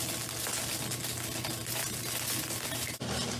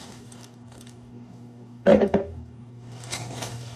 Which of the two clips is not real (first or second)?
second